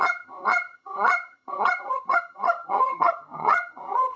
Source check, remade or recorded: remade